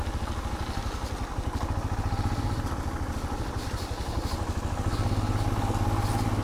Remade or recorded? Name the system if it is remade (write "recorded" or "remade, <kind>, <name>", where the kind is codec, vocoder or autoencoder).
recorded